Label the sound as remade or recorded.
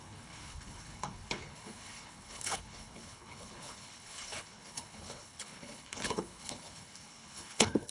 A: remade